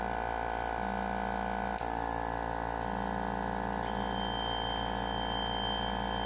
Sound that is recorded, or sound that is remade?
recorded